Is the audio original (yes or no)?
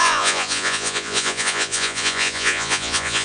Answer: no